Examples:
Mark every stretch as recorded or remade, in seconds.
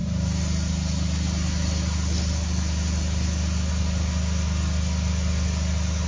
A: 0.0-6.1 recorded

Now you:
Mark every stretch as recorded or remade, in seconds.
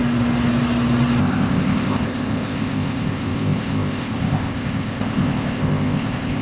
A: 0.0-1.2 recorded; 1.2-6.4 remade